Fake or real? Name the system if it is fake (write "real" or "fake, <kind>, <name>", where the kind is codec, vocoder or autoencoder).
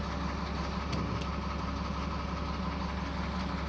real